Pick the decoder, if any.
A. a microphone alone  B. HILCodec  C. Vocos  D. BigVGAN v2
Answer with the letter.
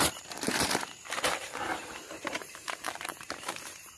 D